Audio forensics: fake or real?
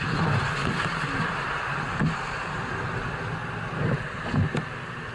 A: real